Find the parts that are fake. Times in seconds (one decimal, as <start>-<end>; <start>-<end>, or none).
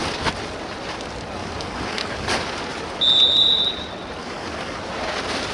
1.4-2.4; 4.2-4.8